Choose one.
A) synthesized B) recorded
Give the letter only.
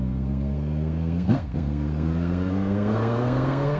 A